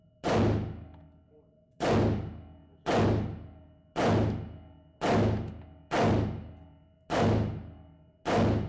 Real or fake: real